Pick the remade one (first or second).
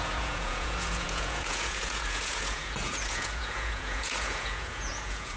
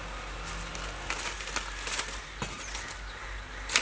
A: first